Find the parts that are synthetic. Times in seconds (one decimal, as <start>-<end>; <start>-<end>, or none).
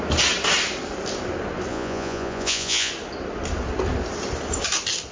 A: 1.7-2.9